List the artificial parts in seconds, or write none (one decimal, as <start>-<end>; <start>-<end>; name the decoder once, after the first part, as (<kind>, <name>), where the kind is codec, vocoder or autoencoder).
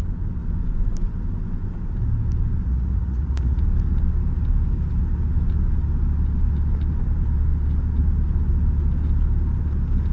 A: 2.6-3.6 (vocoder, Vocos)